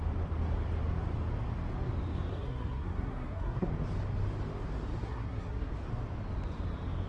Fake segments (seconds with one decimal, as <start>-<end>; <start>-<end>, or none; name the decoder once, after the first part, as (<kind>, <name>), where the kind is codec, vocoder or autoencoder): 2.3-3.7 (codec, SNAC); 5.0-5.7